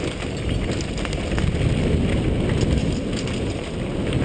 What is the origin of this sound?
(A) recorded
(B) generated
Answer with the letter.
A